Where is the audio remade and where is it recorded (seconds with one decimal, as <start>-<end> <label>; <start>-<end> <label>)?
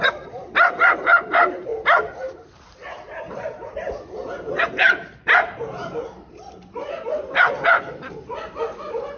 0.0-9.2 remade